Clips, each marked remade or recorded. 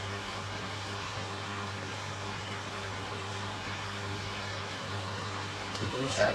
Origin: remade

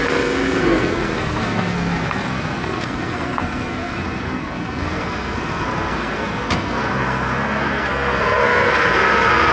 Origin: remade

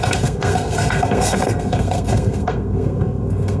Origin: remade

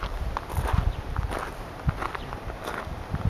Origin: recorded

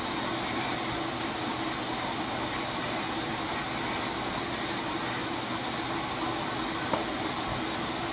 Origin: recorded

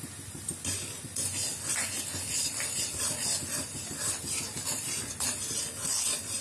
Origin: recorded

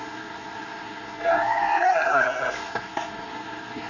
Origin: remade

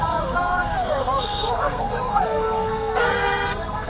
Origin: remade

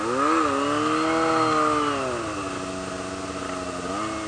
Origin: recorded